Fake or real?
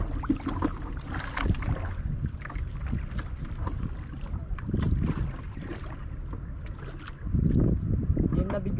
real